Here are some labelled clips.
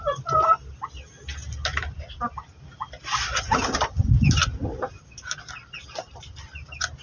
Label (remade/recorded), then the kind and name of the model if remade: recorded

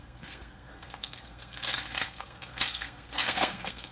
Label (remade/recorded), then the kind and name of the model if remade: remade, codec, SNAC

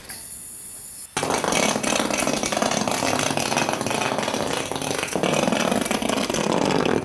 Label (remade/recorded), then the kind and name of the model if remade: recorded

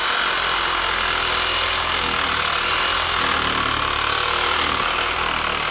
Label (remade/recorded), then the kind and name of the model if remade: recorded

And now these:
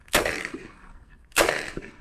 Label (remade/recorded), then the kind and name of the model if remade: remade, codec, SNAC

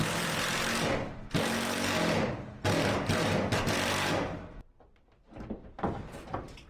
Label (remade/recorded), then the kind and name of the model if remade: recorded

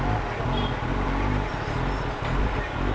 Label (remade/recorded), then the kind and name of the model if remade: recorded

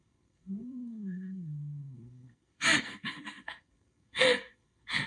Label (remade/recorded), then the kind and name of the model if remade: remade, codec, SNAC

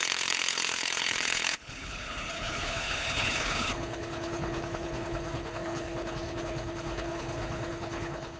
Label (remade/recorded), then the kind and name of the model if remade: remade, codec, HILCodec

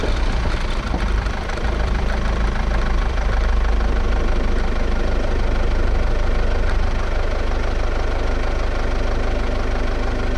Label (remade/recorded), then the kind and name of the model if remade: remade, vocoder, BigVGAN v2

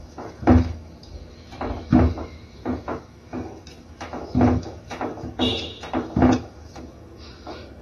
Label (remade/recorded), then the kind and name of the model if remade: remade, autoencoder, DAC-VAE